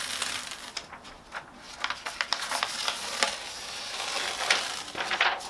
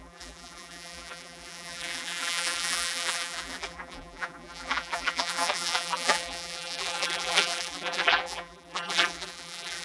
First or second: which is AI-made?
second